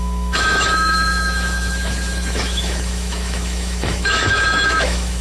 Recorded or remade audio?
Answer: remade